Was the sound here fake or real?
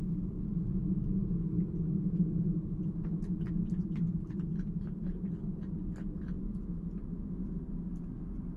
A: real